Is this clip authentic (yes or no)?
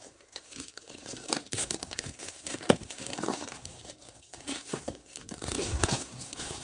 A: no